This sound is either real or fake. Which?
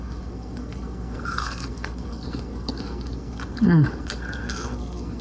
fake